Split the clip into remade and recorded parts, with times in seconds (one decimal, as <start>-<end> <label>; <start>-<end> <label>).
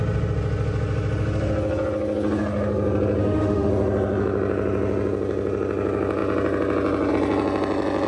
0.0-3.2 recorded; 3.2-3.7 remade; 3.7-8.1 recorded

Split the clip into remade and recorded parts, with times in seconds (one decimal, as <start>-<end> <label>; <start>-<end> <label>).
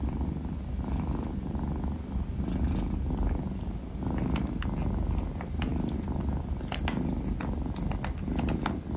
0.0-9.0 recorded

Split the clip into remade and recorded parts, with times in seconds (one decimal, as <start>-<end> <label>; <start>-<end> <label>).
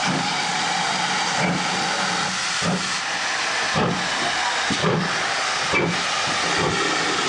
0.0-0.6 remade; 0.6-4.8 recorded; 4.8-5.5 remade; 5.5-7.3 recorded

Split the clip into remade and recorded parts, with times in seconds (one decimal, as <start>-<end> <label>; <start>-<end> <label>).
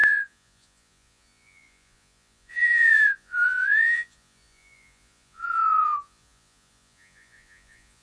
0.0-8.0 remade